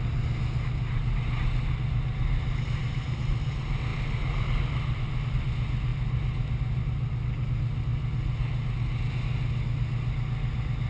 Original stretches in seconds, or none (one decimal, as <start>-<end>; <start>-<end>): 0.0-10.9